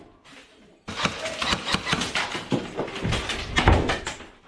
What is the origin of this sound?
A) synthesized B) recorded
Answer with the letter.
B